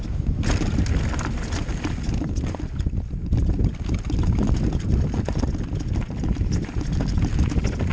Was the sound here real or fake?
real